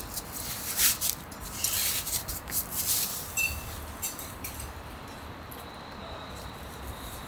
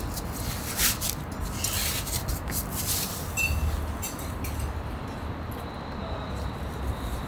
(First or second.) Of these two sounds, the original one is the second